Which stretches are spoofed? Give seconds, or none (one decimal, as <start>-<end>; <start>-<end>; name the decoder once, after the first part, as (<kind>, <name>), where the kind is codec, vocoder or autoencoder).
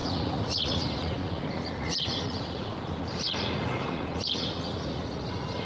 0.0-5.7 (vocoder, Vocos)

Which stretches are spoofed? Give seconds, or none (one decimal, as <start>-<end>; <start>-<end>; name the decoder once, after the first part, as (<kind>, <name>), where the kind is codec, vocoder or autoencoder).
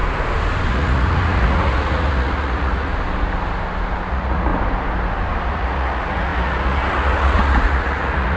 0.7-2.9 (vocoder, Vocos); 4.1-4.5; 5.5-8.4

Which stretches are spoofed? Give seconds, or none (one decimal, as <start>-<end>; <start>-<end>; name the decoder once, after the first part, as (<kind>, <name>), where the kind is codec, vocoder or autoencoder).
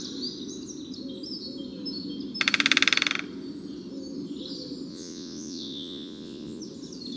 4.9-6.6 (vocoder, Vocos)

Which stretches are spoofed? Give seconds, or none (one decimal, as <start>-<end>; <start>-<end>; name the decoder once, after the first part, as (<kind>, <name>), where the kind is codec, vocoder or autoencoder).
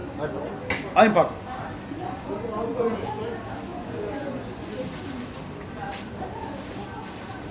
2.7-3.2 (vocoder, Vocos); 3.7-4.7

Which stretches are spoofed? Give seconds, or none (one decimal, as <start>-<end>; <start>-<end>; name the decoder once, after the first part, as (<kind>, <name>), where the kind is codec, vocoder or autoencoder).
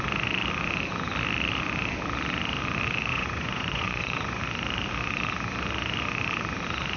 3.1-4.4 (vocoder, Vocos)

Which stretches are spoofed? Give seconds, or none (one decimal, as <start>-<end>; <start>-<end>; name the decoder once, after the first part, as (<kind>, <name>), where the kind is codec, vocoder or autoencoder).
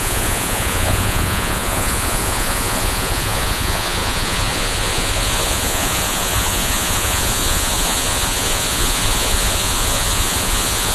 0.0-10.9 (vocoder, Vocos)